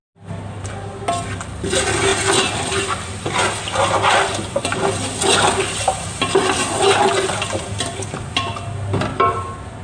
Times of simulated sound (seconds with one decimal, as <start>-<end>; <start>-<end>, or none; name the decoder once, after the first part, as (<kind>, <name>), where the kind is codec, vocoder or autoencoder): none